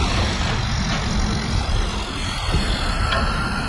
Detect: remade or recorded recorded